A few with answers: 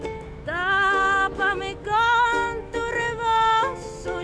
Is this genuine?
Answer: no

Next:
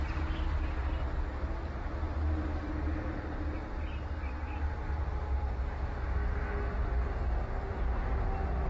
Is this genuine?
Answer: yes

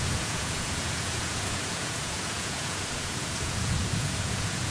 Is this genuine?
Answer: no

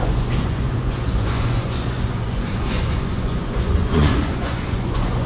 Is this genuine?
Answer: no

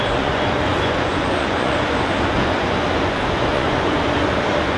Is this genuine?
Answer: no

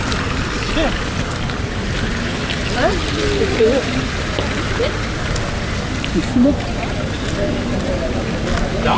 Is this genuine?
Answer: yes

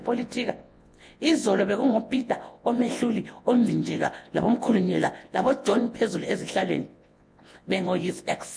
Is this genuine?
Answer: no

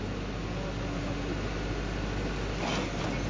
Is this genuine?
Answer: yes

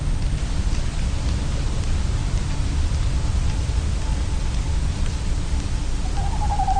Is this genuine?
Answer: yes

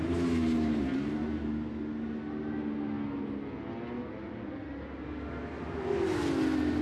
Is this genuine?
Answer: yes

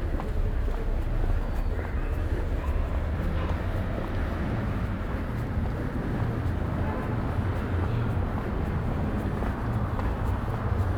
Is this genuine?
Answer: yes